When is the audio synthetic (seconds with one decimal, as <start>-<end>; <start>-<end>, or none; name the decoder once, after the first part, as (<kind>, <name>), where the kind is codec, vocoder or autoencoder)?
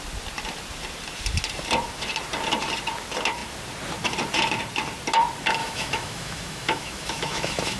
5.6-7.8 (autoencoder, DAC-VAE)